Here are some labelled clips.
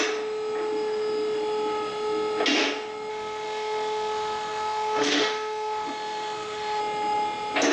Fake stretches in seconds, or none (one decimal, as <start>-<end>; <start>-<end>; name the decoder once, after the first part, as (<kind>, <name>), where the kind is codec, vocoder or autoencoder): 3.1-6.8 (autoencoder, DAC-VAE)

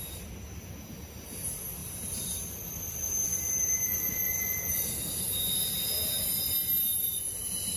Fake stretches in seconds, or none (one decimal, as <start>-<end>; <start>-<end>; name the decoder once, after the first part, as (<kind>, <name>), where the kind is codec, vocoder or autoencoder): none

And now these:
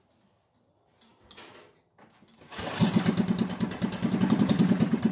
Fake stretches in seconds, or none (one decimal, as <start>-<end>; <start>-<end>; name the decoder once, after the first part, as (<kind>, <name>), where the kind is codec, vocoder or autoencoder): none